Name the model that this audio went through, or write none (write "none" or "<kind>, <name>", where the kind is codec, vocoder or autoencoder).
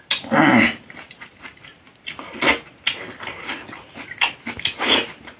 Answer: none